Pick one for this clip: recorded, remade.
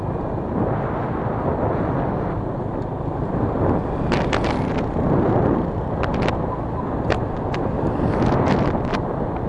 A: recorded